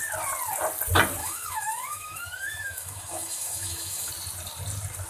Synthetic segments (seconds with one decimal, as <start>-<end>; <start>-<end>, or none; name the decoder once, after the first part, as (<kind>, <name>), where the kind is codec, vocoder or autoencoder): 1.2-4.1 (autoencoder, DAC-VAE)